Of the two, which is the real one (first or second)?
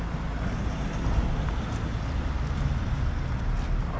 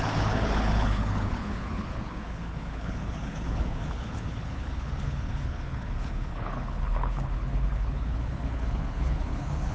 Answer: first